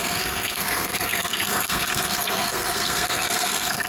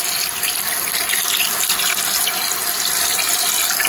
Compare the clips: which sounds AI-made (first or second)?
first